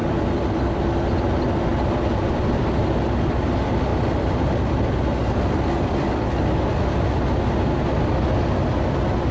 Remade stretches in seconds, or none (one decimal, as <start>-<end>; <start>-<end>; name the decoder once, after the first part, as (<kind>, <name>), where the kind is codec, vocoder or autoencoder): 0.0-0.6 (vocoder, BigVGAN v2); 1.7-2.8; 3.9-6.8